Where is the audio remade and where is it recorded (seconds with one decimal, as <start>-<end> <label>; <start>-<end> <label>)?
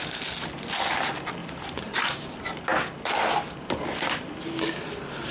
0.0-1.4 recorded; 1.4-1.9 remade; 1.9-5.3 recorded